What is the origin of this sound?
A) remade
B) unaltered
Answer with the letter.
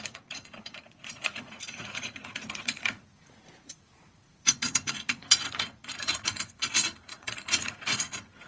A